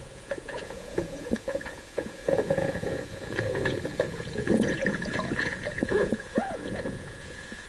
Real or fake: fake